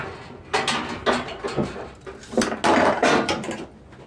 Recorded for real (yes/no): yes